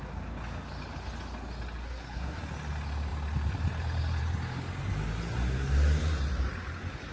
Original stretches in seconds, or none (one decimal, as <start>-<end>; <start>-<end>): 0.0-1.8; 2.4-7.1